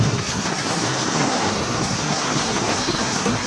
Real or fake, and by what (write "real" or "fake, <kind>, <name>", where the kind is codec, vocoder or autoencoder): fake, codec, SNAC